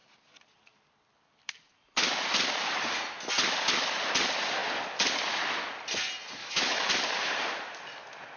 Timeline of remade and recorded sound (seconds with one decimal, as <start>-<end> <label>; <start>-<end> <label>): 0.0-6.4 recorded; 6.4-6.9 remade; 6.9-8.4 recorded